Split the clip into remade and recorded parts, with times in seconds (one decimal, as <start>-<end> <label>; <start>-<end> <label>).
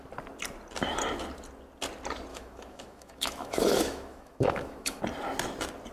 0.0-2.3 recorded; 2.3-5.0 remade; 5.0-5.9 recorded